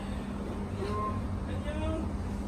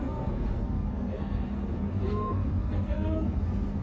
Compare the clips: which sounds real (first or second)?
first